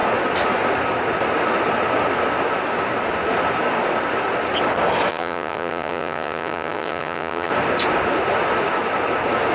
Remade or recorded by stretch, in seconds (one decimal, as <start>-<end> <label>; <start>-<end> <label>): 0.0-5.1 recorded; 5.1-7.5 remade; 7.5-9.5 recorded